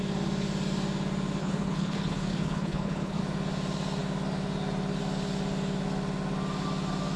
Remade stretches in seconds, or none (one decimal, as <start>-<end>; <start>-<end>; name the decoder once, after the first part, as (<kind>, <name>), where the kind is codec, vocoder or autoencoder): 1.4-3.2 (codec, HILCodec)